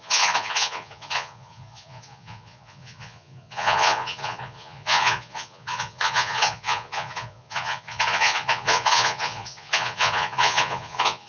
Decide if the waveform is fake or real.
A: fake